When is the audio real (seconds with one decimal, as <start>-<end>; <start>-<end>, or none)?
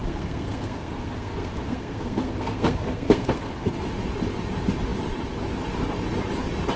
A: 3.7-6.8